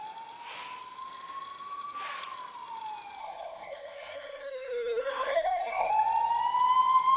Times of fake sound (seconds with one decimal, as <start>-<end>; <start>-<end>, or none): 3.2-5.9